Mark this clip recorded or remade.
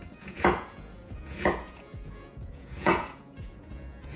remade